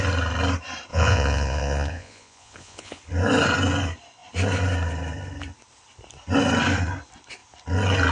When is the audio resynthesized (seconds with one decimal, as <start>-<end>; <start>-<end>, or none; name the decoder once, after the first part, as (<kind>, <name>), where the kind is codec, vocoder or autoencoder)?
0.9-3.0 (vocoder, Vocos)